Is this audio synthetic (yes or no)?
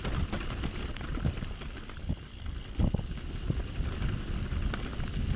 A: no